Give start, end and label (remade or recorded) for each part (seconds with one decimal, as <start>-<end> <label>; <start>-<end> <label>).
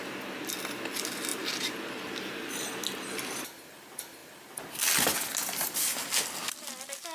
0.0-7.1 recorded